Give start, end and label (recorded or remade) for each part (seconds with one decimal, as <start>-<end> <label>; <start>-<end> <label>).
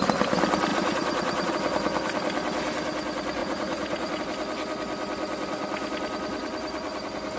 0.0-0.7 recorded; 0.7-1.5 remade; 1.5-3.4 recorded; 3.4-4.2 remade; 4.2-7.4 recorded